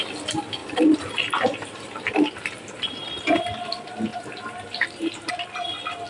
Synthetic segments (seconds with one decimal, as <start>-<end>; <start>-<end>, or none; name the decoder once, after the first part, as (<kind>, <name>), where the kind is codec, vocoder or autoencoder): 0.6-3.4 (vocoder, BigVGAN v2); 4.1-5.3